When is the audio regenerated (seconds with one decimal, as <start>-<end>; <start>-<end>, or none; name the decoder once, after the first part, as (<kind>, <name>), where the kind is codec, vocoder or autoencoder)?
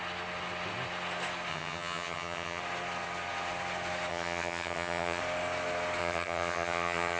1.5-2.6 (vocoder, HiFi-GAN); 4.1-5.2; 6.0-7.2